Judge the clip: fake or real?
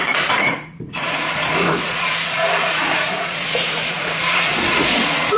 fake